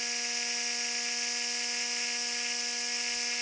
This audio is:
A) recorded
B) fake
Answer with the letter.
A